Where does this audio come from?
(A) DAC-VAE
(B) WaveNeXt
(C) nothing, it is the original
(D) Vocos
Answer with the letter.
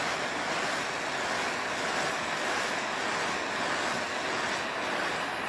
C